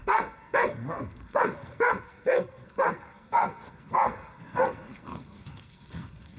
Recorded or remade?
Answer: remade